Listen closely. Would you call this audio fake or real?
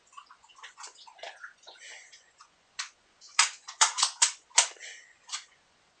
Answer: fake